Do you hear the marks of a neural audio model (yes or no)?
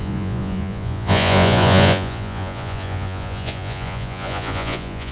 yes